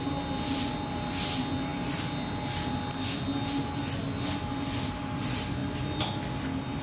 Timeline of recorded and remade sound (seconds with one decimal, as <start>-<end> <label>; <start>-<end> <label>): 0.0-6.8 recorded